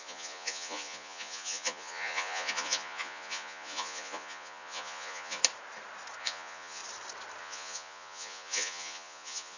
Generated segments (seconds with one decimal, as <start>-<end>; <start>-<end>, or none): 0.0-5.4; 6.2-6.8; 7.4-9.6